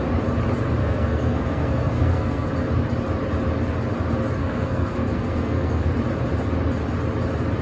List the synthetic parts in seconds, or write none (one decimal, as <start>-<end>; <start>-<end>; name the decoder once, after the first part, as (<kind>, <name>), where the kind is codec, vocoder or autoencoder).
0.8-2.5 (codec, SNAC); 4.4-5.9